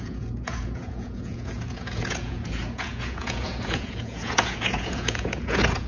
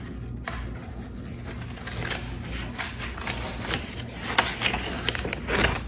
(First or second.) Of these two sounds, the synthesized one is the first